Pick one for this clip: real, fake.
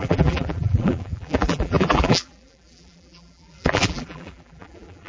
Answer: fake